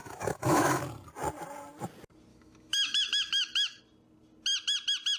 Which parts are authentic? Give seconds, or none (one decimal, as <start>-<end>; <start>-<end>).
0.8-2.3; 3.8-5.2